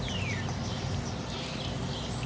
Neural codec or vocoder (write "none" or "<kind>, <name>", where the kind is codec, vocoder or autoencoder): none